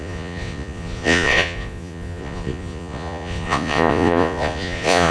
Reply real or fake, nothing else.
fake